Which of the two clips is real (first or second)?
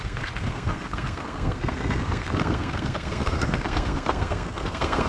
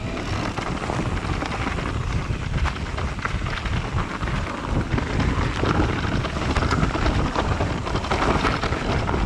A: second